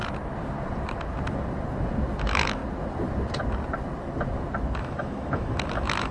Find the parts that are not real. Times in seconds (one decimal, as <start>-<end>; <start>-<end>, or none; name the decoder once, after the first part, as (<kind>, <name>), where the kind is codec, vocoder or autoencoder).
2.2-2.6 (autoencoder, DAC-VAE); 4.8-6.1